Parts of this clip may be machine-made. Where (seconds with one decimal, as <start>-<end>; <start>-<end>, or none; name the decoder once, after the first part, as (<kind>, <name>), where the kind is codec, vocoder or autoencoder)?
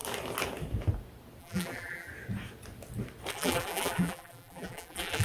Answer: 1.4-2.1 (vocoder, BigVGAN v2); 3.3-5.2